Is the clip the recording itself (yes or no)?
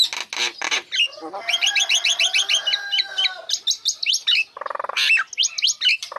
yes